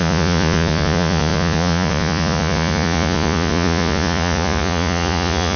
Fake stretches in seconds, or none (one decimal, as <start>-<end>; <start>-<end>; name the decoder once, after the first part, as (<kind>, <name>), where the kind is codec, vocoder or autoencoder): 0.0-5.6 (vocoder, Vocos)